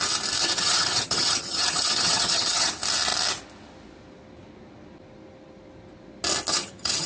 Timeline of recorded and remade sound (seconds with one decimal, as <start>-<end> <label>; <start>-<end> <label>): 0.0-0.4 recorded; 0.4-2.7 remade; 2.7-6.5 recorded; 6.5-7.1 remade